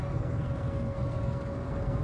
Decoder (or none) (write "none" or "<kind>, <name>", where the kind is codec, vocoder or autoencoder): codec, SNAC